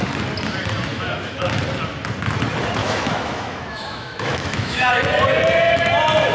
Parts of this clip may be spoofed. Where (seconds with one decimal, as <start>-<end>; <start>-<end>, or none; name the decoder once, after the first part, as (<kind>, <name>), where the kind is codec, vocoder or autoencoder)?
0.9-1.6 (autoencoder, DAC-VAE); 2.8-4.9